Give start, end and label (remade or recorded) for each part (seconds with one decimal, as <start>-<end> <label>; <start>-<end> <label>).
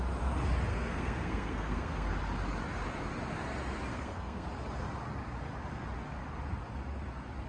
0.0-0.7 recorded; 0.7-2.1 remade; 2.1-3.9 recorded; 3.9-4.5 remade; 4.5-7.5 recorded